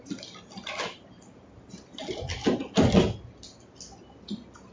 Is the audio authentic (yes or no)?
yes